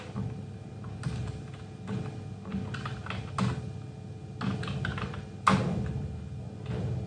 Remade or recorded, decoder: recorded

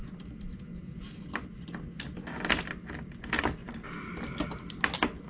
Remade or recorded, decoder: recorded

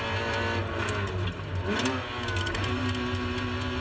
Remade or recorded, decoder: recorded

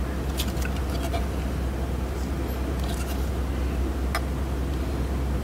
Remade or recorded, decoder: recorded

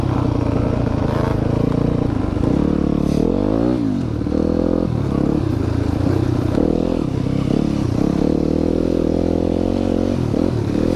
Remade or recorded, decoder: recorded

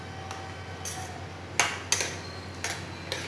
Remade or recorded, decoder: recorded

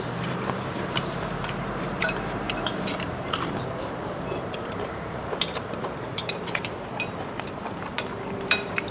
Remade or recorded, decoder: remade, vocoder, BigVGAN v2